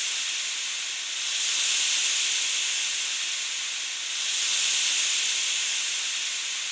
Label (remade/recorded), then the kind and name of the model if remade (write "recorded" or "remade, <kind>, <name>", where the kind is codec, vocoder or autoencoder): remade, vocoder, BigVGAN v2